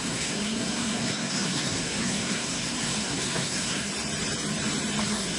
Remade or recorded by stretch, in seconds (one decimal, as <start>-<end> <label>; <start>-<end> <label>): 0.0-3.9 remade; 3.9-5.0 recorded; 5.0-5.4 remade